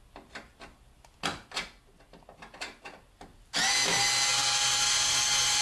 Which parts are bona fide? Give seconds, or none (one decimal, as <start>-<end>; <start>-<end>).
0.0-5.6